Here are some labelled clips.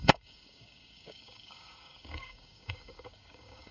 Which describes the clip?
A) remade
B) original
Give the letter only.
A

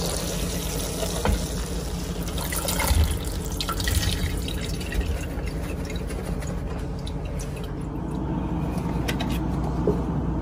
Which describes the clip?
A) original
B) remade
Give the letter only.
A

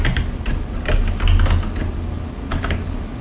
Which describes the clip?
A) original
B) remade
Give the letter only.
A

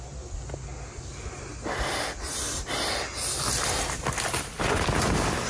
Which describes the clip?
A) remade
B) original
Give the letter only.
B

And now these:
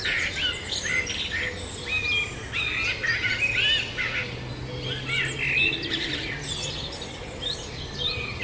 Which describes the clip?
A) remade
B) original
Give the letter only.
B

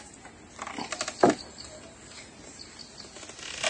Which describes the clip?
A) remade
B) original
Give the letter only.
B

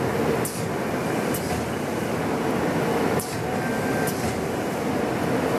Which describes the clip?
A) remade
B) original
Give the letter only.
B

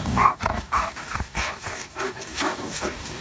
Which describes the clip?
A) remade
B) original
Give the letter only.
A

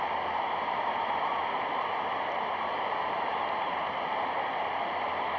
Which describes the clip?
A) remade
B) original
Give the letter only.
B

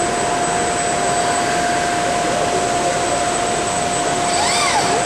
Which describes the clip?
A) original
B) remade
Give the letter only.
A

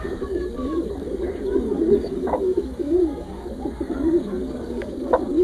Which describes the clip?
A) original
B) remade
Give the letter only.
B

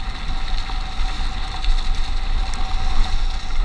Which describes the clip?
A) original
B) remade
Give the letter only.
A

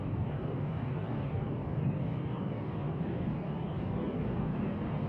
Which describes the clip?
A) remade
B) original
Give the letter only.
A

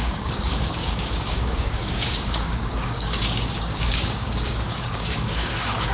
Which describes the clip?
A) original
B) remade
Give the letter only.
B